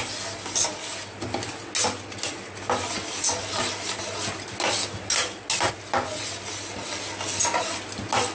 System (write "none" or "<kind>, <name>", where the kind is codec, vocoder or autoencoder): none